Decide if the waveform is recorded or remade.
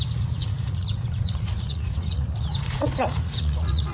remade